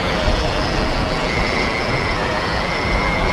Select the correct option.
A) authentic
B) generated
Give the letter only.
B